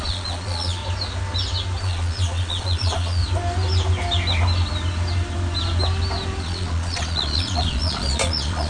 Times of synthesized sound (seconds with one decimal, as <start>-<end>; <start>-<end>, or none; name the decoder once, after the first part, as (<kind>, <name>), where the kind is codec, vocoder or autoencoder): 0.0-0.8 (vocoder, Vocos); 1.8-3.2; 6.4-8.7